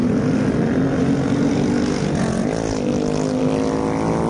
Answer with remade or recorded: recorded